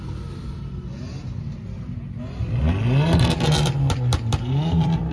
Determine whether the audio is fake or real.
real